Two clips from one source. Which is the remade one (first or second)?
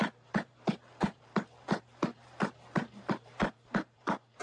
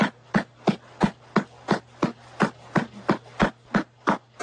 first